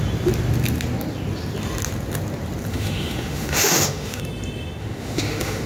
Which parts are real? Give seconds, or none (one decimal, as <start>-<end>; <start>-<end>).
0.0-2.7; 4.2-4.8